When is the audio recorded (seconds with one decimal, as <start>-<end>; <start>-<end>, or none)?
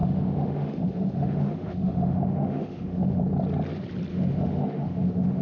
3.2-4.1